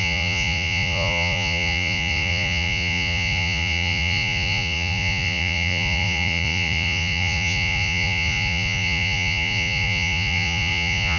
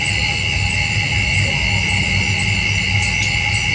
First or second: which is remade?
first